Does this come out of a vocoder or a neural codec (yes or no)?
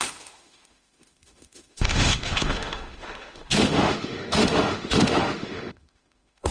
yes